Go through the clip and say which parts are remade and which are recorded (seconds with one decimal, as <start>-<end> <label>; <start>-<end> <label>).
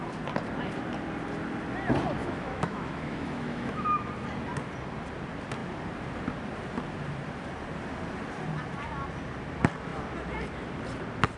0.0-2.2 recorded; 2.2-4.1 remade; 4.1-11.4 recorded